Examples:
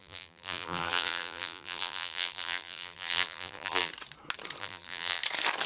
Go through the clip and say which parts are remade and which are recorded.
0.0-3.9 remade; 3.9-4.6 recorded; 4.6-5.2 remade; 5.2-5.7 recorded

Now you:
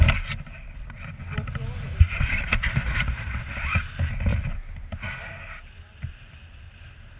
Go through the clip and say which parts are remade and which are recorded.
0.0-1.2 remade; 1.2-2.0 recorded; 2.0-4.3 remade; 4.3-6.1 recorded; 6.1-7.2 remade

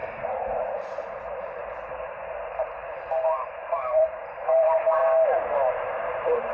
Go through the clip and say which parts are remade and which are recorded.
0.0-5.0 remade; 5.0-5.7 recorded; 5.7-6.5 remade

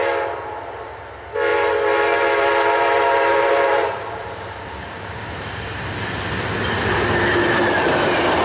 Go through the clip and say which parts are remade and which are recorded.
0.0-1.5 recorded; 1.5-5.8 remade; 5.8-8.4 recorded

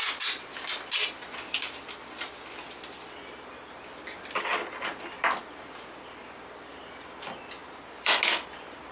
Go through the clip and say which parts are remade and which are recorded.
0.0-7.6 recorded; 7.6-8.2 remade; 8.2-8.9 recorded

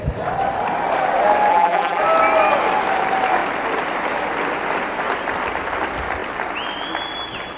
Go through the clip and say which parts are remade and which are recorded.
0.0-1.5 recorded; 1.5-2.0 remade; 2.0-7.6 recorded

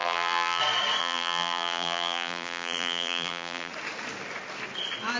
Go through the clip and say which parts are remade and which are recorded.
0.0-0.6 remade; 0.6-1.0 recorded; 1.0-3.7 remade; 3.7-5.2 recorded

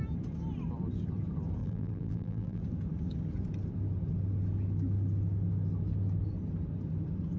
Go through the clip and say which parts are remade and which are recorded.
0.0-1.6 recorded; 1.6-2.6 remade; 2.6-7.4 recorded